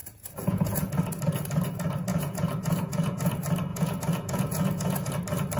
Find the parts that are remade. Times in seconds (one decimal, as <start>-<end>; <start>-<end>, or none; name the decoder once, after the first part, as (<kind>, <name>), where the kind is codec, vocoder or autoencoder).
0.0-0.9 (vocoder, Vocos); 2.1-3.3; 3.7-5.1